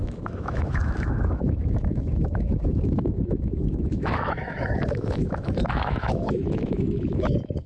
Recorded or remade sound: remade